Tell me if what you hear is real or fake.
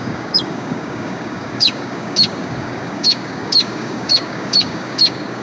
fake